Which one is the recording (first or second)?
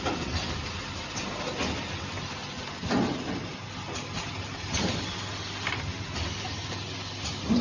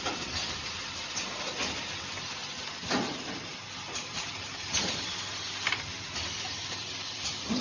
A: first